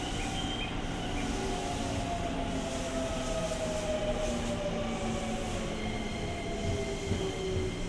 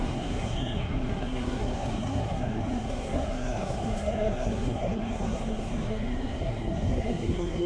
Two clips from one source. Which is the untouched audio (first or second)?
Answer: first